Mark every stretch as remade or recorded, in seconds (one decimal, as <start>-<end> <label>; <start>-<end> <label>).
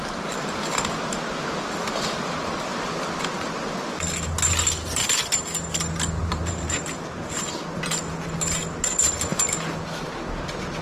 0.0-6.2 recorded; 6.2-7.5 remade; 7.5-10.8 recorded